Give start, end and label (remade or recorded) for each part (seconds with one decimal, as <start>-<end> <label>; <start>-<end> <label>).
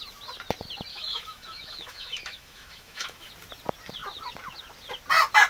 0.0-0.9 recorded; 0.9-3.3 remade; 3.3-5.5 recorded